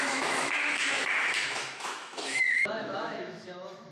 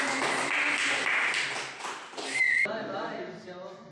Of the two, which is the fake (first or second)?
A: first